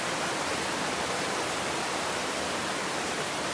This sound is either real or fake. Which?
real